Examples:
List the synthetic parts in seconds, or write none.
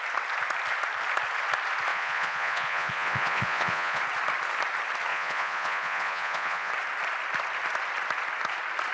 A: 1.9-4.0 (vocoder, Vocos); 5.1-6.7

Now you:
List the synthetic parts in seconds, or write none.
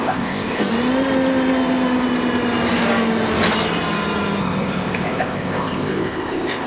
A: 0.0-0.7 (codec, ZipCodec); 4.4-6.7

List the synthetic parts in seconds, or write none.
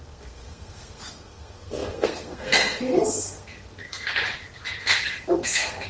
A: 0.0-4.2 (codec, SNAC); 4.8-5.9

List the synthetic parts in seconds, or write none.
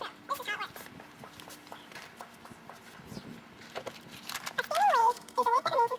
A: 5.0-6.0 (codec, SNAC)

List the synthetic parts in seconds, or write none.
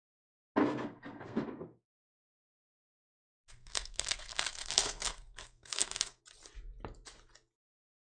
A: 0.6-2.7 (codec, SNAC); 3.3-6.2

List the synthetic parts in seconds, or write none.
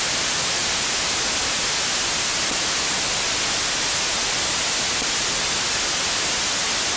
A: none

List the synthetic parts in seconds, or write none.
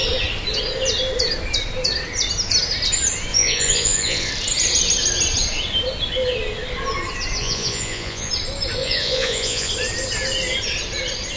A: 3.3-4.3 (vocoder, Vocos); 7.4-8.3; 8.8-9.7